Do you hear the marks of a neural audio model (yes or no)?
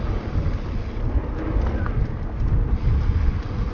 no